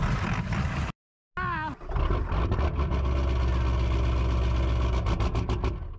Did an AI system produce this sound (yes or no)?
no